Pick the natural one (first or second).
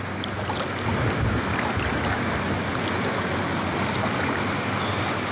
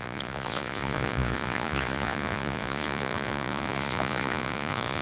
first